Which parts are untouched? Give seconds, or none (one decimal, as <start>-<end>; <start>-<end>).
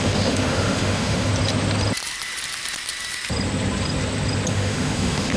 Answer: 1.3-4.5